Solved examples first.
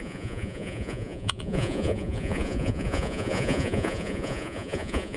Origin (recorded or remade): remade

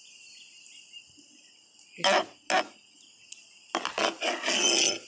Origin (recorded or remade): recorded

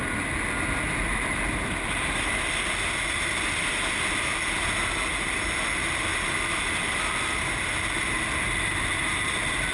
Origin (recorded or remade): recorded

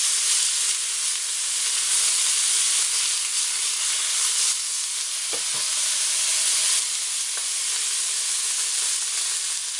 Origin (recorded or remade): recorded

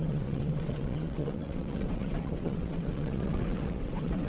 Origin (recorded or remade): remade